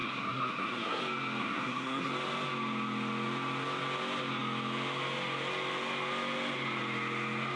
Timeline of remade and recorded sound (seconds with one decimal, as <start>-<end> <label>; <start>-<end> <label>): 0.0-1.0 remade; 1.0-1.4 recorded; 1.4-2.1 remade; 2.1-7.6 recorded